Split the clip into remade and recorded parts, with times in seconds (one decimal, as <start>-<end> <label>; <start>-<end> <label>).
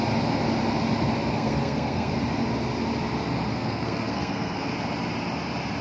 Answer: 0.0-1.3 recorded; 1.3-2.1 remade; 2.1-3.5 recorded; 3.5-4.6 remade; 4.6-5.8 recorded